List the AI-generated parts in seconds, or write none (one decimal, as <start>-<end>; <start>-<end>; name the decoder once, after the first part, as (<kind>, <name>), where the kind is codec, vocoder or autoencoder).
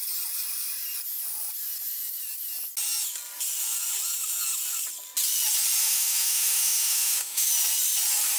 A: 5.8-7.5 (autoencoder, DAC-VAE)